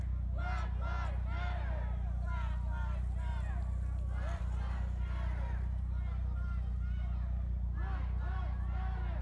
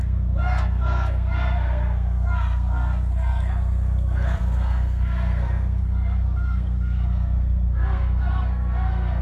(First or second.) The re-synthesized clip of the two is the second